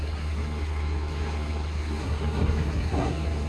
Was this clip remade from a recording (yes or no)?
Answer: yes